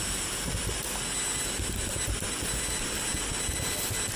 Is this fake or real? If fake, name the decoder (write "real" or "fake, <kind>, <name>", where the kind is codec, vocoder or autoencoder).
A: real